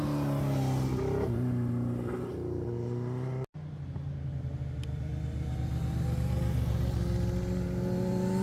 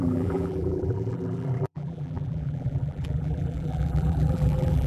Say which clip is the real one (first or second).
first